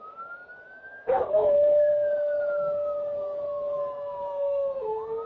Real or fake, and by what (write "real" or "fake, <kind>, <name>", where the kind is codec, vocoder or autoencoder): fake, autoencoder, DAC-VAE